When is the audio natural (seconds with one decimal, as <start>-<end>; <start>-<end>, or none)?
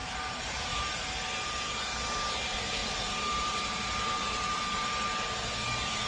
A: 1.6-2.8; 4.6-6.1